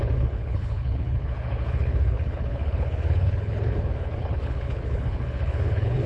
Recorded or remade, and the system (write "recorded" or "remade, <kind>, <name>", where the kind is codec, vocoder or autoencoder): remade, codec, HILCodec